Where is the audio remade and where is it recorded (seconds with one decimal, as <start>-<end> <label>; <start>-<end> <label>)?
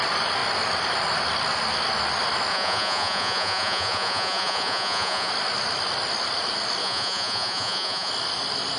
0.0-2.5 recorded; 2.5-5.3 remade; 5.3-6.8 recorded; 6.8-8.1 remade; 8.1-8.8 recorded